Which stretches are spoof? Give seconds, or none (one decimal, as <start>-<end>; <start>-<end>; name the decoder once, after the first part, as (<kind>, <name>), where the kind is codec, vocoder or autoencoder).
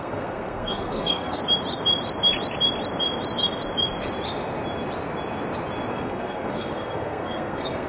0.0-1.4 (codec, SNAC); 5.9-7.9